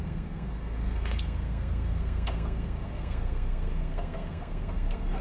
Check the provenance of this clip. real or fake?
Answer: fake